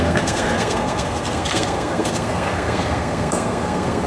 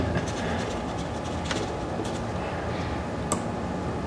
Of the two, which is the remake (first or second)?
first